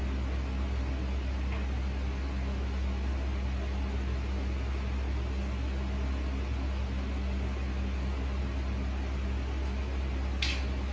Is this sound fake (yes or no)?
no